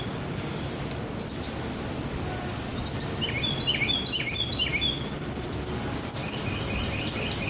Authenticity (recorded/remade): recorded